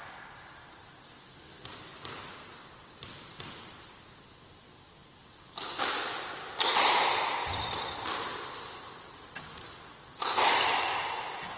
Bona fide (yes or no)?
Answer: no